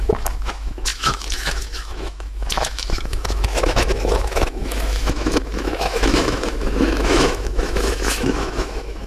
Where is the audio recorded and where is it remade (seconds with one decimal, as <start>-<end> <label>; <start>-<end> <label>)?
0.0-9.1 remade